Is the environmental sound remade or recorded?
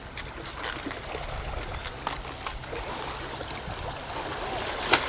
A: recorded